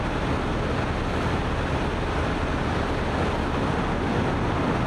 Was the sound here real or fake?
real